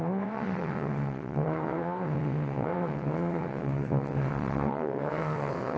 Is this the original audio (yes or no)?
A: no